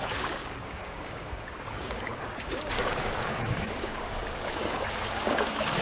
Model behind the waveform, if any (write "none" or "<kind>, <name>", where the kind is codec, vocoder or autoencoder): codec, DAC